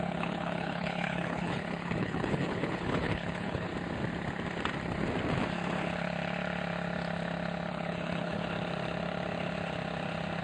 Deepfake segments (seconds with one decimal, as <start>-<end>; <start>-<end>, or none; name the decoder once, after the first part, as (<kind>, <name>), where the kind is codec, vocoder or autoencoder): 0.0-3.7 (codec, HILCodec); 7.7-8.4